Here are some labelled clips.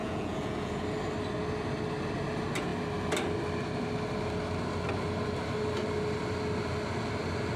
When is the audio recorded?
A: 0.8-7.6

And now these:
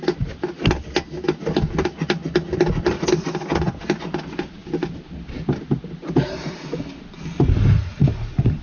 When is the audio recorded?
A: 0.0-8.6

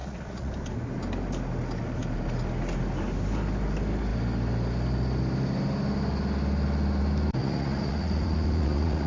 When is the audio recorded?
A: 0.5-7.4

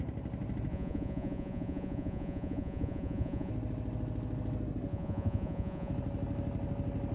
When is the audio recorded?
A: 0.0-0.7; 3.5-4.9; 5.9-7.1

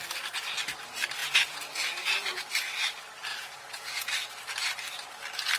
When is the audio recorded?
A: 0.0-1.2; 1.7-3.3; 4.1-5.6